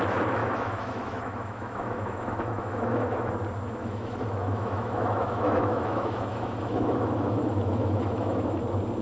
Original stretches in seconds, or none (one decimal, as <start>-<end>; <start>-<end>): 0.0-0.4; 3.3-3.8; 8.6-9.0